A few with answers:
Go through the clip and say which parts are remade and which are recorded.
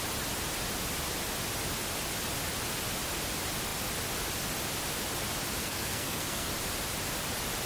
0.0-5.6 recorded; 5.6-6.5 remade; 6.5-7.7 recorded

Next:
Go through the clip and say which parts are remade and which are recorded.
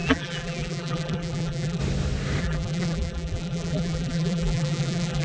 0.0-1.8 remade; 1.8-2.4 recorded; 2.4-5.2 remade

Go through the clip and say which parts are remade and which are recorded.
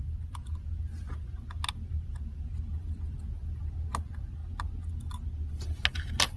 0.0-6.4 recorded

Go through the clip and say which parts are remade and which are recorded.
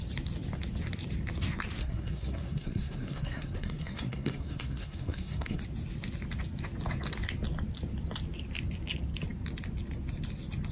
0.0-1.8 recorded; 1.8-5.6 remade; 5.6-10.7 recorded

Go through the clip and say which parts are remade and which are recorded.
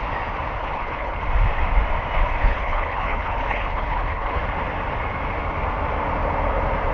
0.0-0.6 recorded; 0.6-1.2 remade; 1.2-2.4 recorded; 2.4-4.4 remade; 4.4-6.9 recorded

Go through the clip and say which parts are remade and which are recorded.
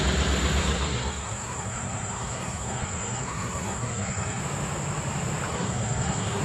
0.0-0.6 recorded; 0.6-4.4 remade; 4.4-5.5 recorded; 5.5-6.4 remade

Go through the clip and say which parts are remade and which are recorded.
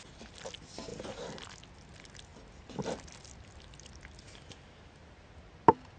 0.0-0.9 recorded; 0.9-1.6 remade; 1.6-6.0 recorded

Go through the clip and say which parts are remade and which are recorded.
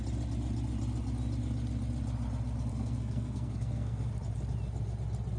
0.0-2.7 recorded; 2.7-4.1 remade; 4.1-5.4 recorded